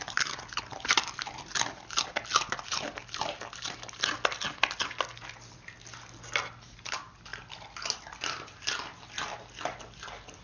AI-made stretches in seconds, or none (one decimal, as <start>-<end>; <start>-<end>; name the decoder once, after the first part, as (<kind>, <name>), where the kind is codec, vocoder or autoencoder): none